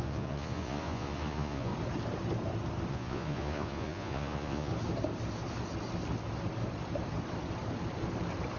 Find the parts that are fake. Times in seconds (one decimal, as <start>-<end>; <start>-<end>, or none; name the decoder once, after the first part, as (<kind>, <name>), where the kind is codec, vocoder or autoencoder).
0.0-1.7 (vocoder, Vocos); 2.9-4.7